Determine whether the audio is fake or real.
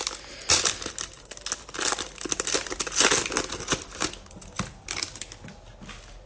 real